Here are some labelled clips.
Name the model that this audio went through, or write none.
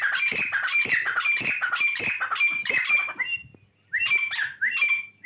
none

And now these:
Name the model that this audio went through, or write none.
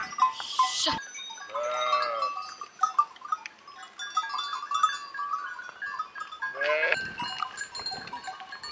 none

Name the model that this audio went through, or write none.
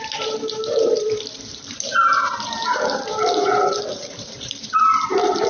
vocoder, BigVGAN v2